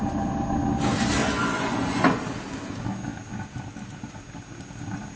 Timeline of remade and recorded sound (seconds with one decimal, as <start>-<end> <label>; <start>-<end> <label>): 0.0-1.2 recorded; 1.2-2.2 remade; 2.2-5.2 recorded